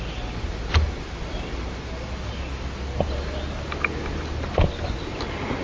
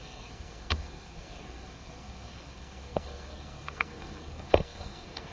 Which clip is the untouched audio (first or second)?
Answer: first